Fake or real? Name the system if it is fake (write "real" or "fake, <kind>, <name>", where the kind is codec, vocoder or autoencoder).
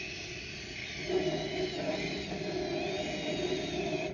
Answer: real